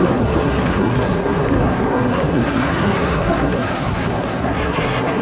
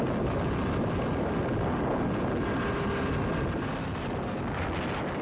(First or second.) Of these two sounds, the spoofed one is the first